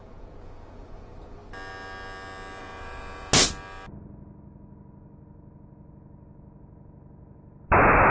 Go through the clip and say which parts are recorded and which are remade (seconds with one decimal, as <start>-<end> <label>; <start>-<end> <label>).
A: 0.0-1.4 remade; 1.4-2.6 recorded; 2.6-3.3 remade; 3.3-8.1 recorded